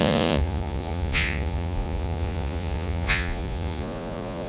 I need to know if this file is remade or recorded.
remade